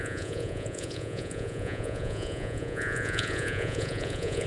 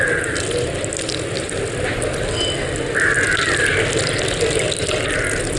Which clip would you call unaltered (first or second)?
second